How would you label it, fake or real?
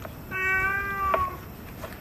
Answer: real